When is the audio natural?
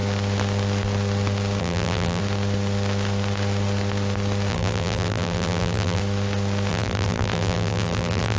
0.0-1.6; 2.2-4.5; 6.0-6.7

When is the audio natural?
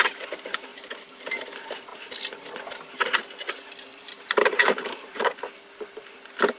0.0-0.7; 1.4-3.9; 5.4-6.6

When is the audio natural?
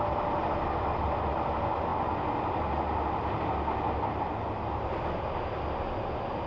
0.0-6.5